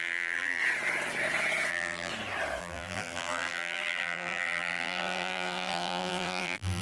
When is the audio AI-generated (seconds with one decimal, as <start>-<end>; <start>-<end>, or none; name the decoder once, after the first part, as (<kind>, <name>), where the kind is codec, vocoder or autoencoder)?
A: 0.0-0.6 (vocoder, BigVGAN v2); 1.7-2.1; 2.6-6.8